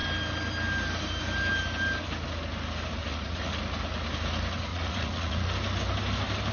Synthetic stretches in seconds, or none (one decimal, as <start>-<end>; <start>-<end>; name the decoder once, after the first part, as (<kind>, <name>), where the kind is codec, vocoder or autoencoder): 3.0-3.5 (vocoder, Vocos); 4.7-5.5